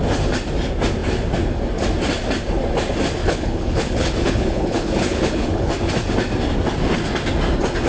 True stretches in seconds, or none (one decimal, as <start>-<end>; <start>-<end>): 0.0-3.2; 5.7-7.9